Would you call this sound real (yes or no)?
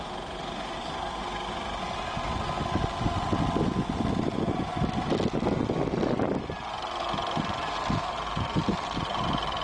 yes